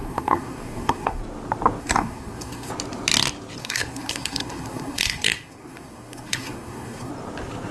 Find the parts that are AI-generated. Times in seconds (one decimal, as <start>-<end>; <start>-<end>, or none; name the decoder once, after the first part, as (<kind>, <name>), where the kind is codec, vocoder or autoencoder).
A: 0.0-1.2 (codec, SNAC); 1.8-2.7; 3.6-7.1